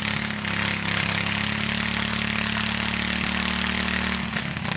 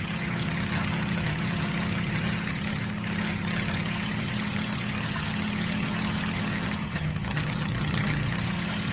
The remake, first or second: second